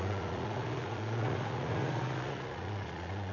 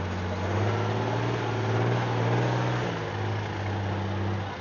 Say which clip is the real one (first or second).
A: second